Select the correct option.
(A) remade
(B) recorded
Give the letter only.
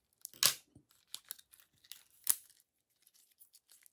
B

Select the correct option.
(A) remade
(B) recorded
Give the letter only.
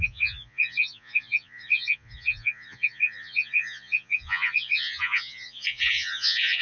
A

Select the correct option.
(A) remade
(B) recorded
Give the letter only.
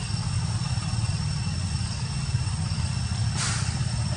B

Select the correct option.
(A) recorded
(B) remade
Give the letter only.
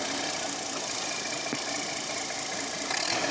A